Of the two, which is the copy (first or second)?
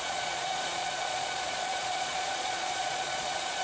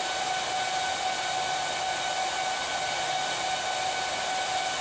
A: first